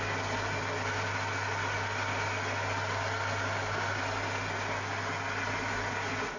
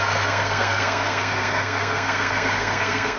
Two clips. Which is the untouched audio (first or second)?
first